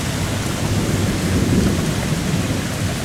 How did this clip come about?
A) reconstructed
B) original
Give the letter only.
B